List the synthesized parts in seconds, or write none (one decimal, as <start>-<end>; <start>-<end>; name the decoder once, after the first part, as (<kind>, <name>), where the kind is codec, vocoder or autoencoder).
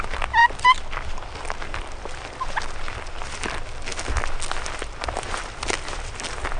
none